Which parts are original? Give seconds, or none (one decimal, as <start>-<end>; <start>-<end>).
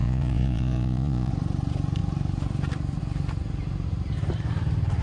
1.3-5.0